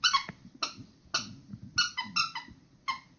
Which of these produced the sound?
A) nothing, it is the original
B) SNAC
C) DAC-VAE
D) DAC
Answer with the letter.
A